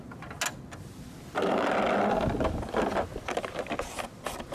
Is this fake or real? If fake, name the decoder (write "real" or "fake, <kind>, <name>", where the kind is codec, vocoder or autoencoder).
real